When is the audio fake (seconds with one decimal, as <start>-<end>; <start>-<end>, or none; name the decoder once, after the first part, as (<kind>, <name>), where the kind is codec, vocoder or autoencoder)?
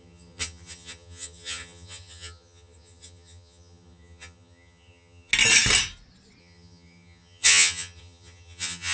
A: 0.0-5.3 (vocoder, HiFi-GAN); 6.4-8.9